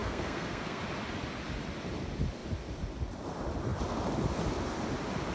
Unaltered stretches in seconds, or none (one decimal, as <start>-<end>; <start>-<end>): 0.8-5.3

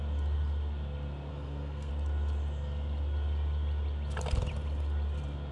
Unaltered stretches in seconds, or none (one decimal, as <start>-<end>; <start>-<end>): 0.0-1.3; 1.9-5.5